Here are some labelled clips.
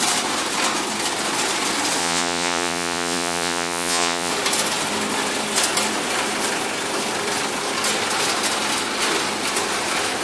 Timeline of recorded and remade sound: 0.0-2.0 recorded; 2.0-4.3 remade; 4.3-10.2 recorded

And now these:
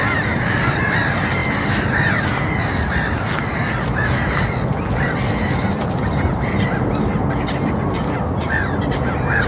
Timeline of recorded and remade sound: 0.0-9.5 recorded

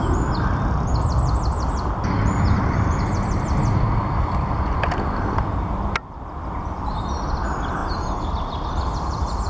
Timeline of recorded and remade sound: 0.0-9.5 recorded

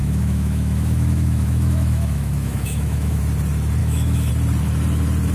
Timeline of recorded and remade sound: 0.0-3.2 remade; 3.2-3.8 recorded; 3.8-4.3 remade; 4.3-5.3 recorded

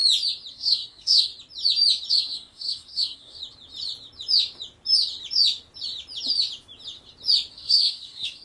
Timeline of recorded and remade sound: 0.0-0.5 recorded; 0.5-1.3 remade; 1.3-2.1 recorded; 2.1-3.4 remade; 3.4-7.5 recorded; 7.5-8.4 remade

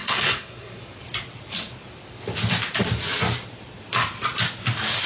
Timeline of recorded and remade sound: 0.0-0.8 remade; 0.8-5.1 recorded

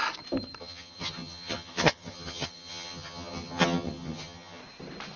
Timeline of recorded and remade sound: 0.0-0.6 recorded; 0.6-4.6 remade; 4.6-5.2 recorded